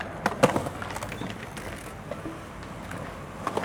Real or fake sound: real